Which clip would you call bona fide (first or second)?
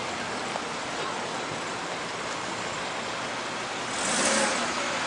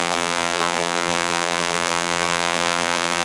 first